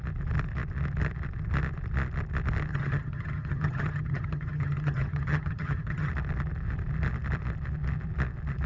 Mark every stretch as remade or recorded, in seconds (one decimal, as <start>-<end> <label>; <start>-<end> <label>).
0.0-2.7 recorded; 2.7-6.1 remade; 6.1-8.7 recorded